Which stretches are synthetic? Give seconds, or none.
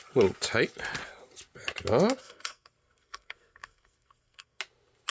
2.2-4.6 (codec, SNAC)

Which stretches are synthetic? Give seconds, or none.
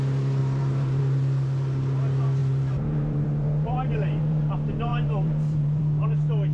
0.4-1.0 (vocoder, BigVGAN v2); 2.4-4.4; 4.9-5.8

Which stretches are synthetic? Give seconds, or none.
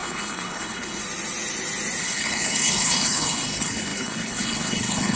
0.0-1.0 (codec, HILCodec); 2.0-5.2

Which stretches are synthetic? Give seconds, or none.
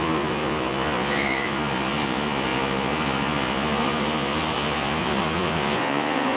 0.0-6.4 (vocoder, Vocos)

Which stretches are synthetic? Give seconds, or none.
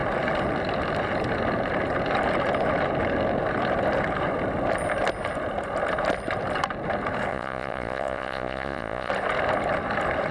7.3-9.1 (vocoder, Vocos)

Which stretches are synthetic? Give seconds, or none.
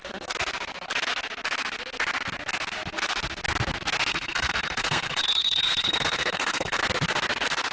4.1-6.8 (codec, SNAC)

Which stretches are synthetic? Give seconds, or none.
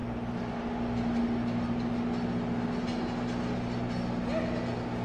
none